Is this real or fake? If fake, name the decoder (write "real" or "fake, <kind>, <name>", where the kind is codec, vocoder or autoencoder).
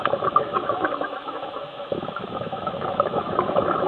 fake, autoencoder, DAC-VAE